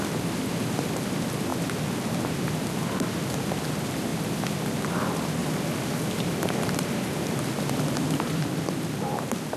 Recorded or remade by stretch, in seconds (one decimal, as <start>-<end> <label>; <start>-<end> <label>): 0.0-1.5 remade; 1.5-3.6 recorded; 3.6-9.6 remade

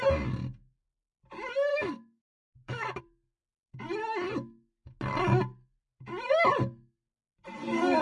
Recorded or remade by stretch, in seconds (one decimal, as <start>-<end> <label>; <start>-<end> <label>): 0.0-1.7 recorded; 1.7-3.0 remade; 3.0-8.0 recorded

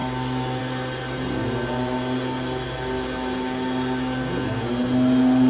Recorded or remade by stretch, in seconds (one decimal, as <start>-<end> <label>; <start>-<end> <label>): 0.0-0.6 remade; 0.6-5.5 recorded

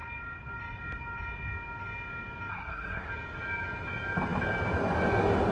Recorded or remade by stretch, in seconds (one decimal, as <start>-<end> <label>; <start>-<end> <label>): 0.0-2.5 recorded; 2.5-3.1 remade; 3.1-5.5 recorded